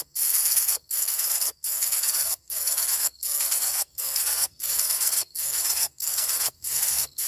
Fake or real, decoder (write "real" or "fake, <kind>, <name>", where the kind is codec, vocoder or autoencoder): fake, codec, SNAC